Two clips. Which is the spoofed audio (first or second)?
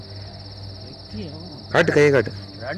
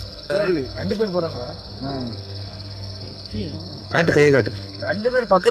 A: second